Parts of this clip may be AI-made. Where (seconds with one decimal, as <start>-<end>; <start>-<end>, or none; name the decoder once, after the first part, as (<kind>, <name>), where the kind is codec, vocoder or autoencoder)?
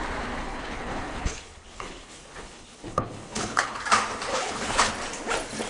0.4-3.8 (codec, HILCodec); 4.3-4.9